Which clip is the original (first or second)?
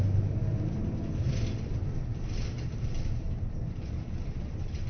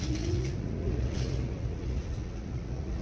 first